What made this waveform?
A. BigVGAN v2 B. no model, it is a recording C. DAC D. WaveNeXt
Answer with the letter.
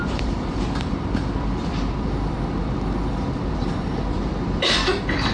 A